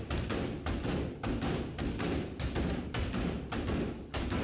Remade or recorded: recorded